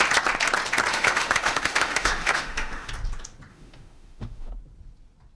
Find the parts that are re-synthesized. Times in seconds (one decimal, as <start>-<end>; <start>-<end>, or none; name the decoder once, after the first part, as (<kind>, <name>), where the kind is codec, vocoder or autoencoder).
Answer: 0.9-2.9 (autoencoder, DAC-VAE); 3.5-4.5